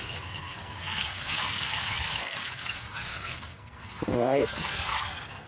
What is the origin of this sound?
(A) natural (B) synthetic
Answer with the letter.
B